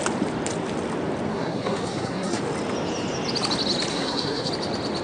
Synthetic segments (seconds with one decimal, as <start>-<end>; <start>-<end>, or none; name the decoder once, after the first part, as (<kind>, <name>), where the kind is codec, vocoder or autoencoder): 1.3-2.4 (codec, SNAC); 3.9-4.5